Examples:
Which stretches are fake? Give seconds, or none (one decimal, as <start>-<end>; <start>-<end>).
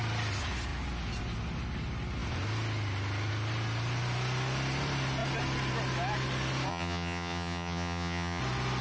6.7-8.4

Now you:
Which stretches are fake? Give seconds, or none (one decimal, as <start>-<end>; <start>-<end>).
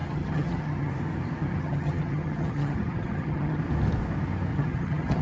0.0-0.9; 1.4-3.6; 4.5-5.2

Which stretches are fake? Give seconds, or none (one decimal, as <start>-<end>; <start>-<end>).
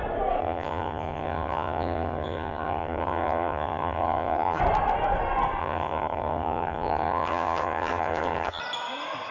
0.4-4.6; 5.6-8.6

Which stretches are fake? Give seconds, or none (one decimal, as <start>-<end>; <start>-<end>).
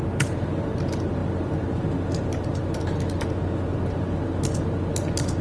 none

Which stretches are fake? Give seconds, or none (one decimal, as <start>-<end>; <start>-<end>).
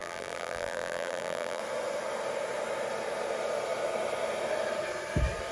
0.0-1.6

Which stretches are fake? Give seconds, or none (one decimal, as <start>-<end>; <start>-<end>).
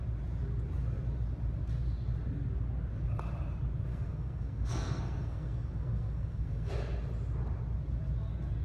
3.9-6.7